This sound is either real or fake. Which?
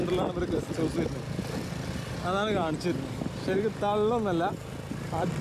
fake